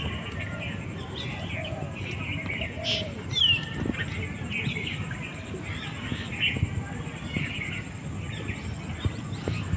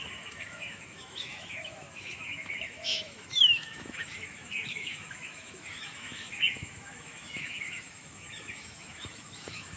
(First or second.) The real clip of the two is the first